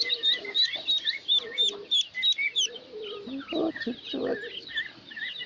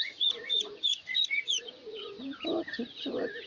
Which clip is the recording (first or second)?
first